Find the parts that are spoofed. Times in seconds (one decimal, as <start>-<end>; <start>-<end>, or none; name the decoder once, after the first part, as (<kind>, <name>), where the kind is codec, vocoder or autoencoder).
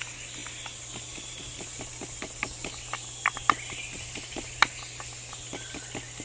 none